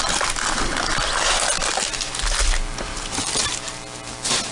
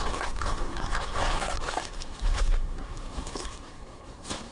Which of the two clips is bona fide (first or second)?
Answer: first